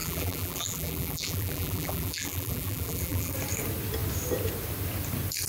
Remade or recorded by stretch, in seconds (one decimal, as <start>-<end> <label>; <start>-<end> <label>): 0.0-3.3 remade; 3.3-5.5 recorded

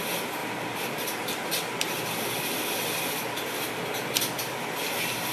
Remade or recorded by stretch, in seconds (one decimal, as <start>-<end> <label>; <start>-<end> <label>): 0.0-5.3 recorded

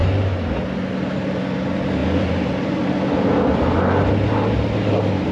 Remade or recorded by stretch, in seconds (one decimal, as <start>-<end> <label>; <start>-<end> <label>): 0.0-2.0 recorded; 2.0-2.7 remade; 2.7-5.3 recorded

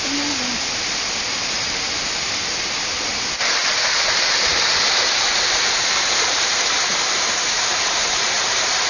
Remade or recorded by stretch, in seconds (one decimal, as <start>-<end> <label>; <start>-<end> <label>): 0.0-3.6 recorded; 3.6-8.9 remade

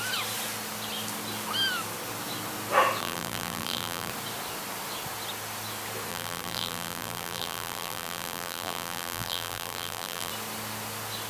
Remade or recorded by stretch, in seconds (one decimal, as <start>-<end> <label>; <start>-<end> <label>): 0.0-3.0 recorded; 3.0-4.1 remade; 4.1-6.1 recorded; 6.1-10.3 remade; 10.3-11.3 recorded